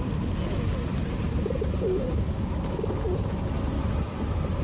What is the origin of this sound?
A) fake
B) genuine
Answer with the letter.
B